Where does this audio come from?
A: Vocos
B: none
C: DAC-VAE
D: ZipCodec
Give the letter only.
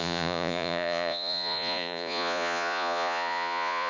A